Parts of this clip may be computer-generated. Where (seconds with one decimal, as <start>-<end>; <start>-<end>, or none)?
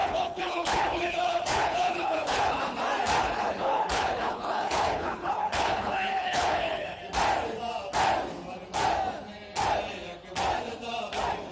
0.0-2.6; 3.2-7.0